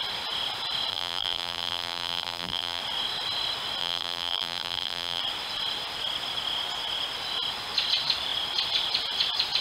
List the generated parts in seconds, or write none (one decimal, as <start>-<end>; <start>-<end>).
0.9-2.8; 3.8-5.2